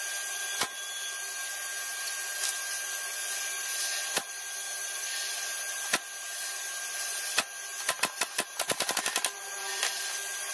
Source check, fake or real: real